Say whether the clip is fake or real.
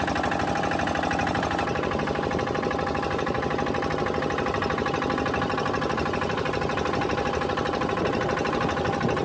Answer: real